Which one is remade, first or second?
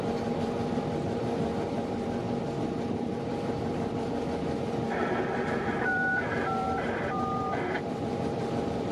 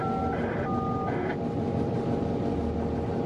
first